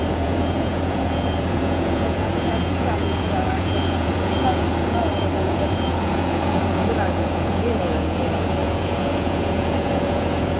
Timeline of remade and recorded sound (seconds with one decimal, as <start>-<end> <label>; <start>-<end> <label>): 0.0-10.6 remade